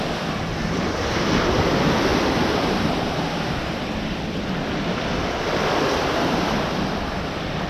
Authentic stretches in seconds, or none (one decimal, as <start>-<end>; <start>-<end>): 0.0-7.7

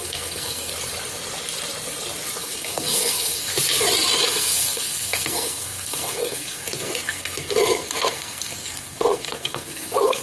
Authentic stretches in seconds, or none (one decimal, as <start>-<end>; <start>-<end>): 0.7-2.4; 3.5-4.3

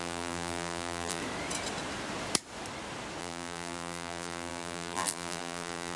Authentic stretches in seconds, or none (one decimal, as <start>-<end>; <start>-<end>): 1.2-3.2

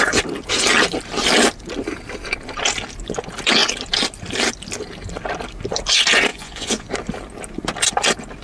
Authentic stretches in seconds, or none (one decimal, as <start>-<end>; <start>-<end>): 0.0-6.3; 6.9-8.4

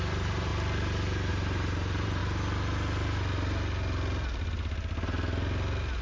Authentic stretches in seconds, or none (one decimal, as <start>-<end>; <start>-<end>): 0.5-1.3; 2.2-6.0